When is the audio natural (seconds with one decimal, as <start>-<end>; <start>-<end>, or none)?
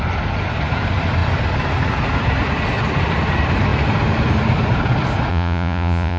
0.0-5.3